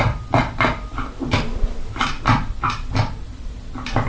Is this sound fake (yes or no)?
yes